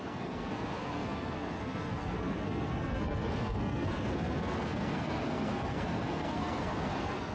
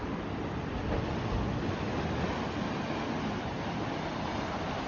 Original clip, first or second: second